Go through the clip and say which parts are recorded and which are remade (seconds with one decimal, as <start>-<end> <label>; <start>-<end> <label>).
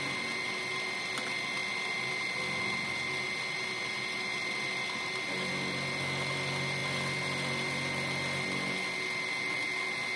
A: 0.0-10.2 recorded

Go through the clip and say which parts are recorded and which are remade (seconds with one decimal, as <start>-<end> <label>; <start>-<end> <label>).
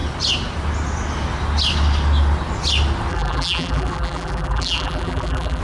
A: 0.0-3.1 recorded; 3.1-5.6 remade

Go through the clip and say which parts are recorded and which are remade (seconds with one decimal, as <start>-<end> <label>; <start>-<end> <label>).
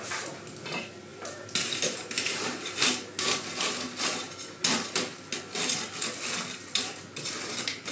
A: 0.0-1.1 recorded; 1.1-2.8 remade; 2.8-7.9 recorded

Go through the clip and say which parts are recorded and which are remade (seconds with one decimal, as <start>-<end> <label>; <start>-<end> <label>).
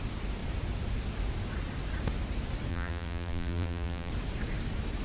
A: 0.0-2.7 recorded; 2.7-4.1 remade; 4.1-5.0 recorded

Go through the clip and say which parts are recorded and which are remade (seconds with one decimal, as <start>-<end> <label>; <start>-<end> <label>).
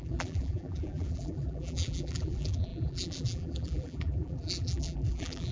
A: 0.0-5.5 remade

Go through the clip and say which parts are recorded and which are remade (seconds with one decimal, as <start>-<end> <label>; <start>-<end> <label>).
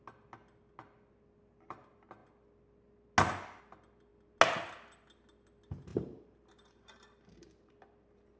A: 0.0-5.9 recorded; 5.9-7.7 remade; 7.7-8.4 recorded